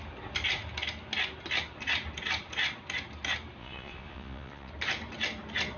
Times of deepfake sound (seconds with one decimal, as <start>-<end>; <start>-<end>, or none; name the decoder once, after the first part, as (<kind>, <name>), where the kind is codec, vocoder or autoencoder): 3.6-4.7 (vocoder, Vocos)